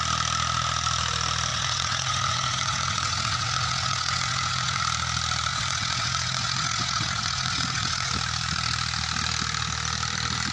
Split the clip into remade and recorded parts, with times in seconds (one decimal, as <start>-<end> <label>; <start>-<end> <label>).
0.0-1.5 recorded; 1.5-4.8 remade; 4.8-5.5 recorded; 5.5-8.1 remade; 8.1-10.5 recorded